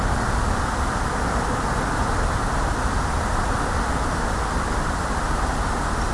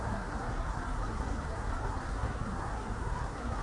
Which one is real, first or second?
first